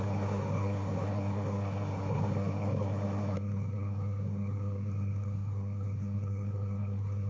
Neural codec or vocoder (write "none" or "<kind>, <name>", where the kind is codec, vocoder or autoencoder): codec, SNAC